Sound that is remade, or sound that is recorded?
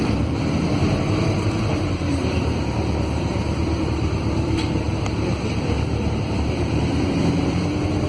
remade